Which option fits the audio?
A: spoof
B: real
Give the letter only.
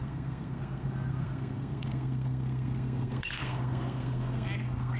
A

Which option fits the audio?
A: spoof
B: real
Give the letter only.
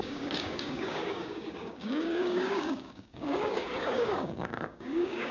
A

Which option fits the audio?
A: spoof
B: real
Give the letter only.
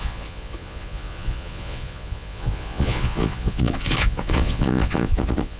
A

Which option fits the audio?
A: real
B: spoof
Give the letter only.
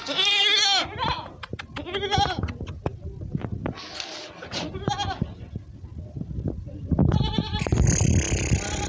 A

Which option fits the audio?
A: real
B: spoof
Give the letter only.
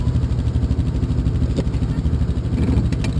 A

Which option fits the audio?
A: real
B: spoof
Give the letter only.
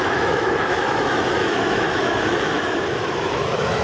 B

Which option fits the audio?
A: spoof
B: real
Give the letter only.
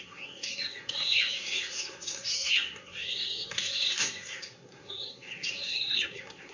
A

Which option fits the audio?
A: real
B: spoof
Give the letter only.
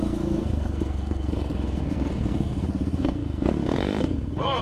B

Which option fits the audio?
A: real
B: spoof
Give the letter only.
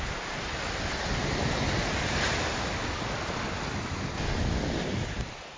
A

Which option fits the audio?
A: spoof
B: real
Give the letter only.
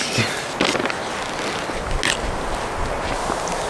B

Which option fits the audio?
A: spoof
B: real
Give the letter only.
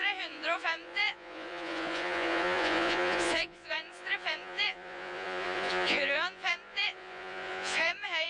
A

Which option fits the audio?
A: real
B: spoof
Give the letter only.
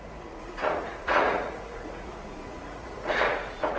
B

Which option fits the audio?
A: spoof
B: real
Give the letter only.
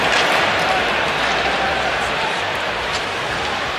B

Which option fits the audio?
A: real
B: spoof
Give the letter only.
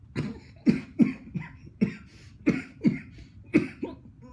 A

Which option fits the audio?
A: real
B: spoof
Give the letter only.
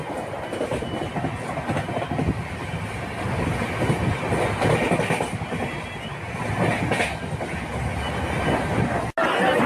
A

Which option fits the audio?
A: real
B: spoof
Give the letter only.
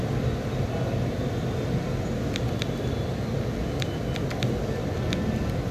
A